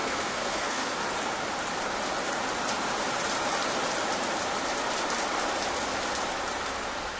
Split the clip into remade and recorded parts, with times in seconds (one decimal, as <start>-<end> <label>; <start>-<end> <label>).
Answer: 0.0-1.0 remade; 1.0-7.2 recorded